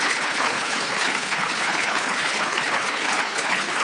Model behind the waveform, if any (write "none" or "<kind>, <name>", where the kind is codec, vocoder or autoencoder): codec, HILCodec